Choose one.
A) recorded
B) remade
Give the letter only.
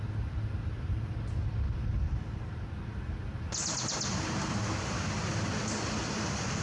A